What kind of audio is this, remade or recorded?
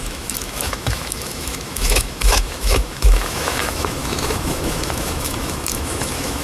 remade